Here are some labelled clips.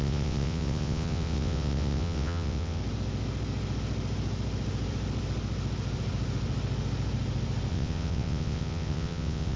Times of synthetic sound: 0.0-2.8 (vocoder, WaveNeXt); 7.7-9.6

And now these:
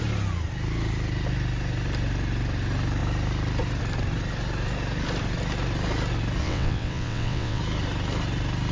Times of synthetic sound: 6.4-7.6 (vocoder, WaveNeXt)

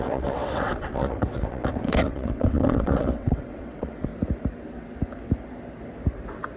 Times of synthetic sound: 0.0-4.1 (vocoder, WaveNeXt)

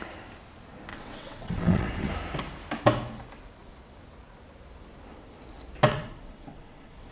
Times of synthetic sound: 0.9-2.1 (vocoder, WaveNeXt); 5.9-7.1